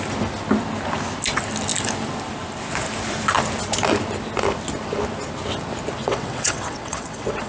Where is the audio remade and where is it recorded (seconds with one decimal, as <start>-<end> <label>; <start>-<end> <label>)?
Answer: 0.0-6.0 recorded; 6.0-7.5 remade